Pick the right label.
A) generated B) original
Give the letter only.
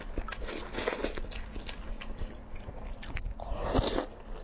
B